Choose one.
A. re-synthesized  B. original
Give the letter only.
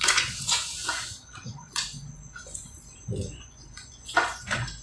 A